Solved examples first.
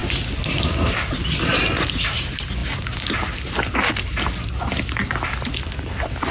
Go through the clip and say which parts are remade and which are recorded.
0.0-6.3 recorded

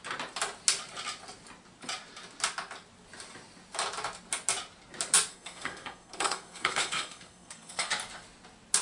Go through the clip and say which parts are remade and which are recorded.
0.0-5.3 recorded; 5.3-7.9 remade; 7.9-8.8 recorded

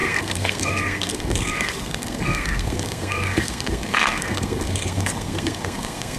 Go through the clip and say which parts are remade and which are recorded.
0.0-6.2 remade

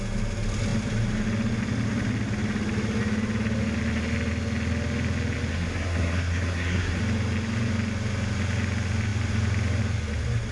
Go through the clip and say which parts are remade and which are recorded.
0.0-5.5 recorded; 5.5-7.0 remade; 7.0-10.5 recorded

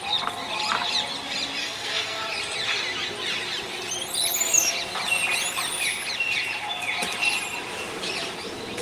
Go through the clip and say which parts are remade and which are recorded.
0.0-1.6 recorded; 1.6-2.2 remade; 2.2-8.8 recorded